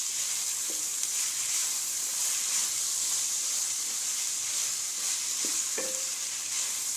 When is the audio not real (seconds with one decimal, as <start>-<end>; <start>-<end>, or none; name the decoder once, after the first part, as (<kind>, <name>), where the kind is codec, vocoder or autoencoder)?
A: 0.0-4.6 (vocoder, BigVGAN v2); 5.3-7.0